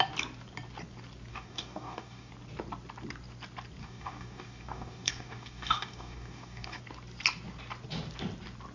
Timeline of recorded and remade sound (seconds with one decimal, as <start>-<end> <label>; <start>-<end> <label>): 0.0-1.3 recorded; 1.3-2.3 remade; 2.3-3.8 recorded; 3.8-6.8 remade; 6.8-8.7 recorded